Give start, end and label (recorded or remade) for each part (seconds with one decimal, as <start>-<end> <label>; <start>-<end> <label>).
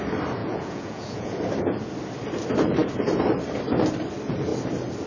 0.0-0.4 recorded; 0.4-1.4 remade; 1.4-5.1 recorded